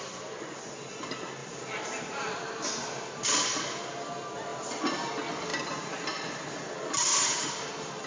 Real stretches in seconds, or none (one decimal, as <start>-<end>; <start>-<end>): 0.0-1.4; 2.4-4.5; 5.1-7.1; 7.6-8.1